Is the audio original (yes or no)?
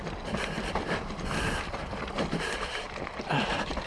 yes